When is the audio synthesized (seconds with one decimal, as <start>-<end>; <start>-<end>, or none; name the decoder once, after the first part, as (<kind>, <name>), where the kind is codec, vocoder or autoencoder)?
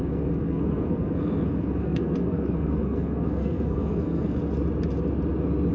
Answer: 0.0-4.4 (codec, SNAC)